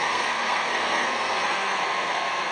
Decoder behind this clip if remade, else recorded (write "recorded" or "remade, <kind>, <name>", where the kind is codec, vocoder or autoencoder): remade, codec, SNAC